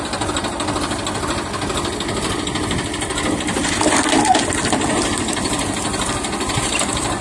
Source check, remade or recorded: recorded